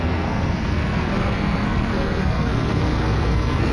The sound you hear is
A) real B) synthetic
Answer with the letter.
B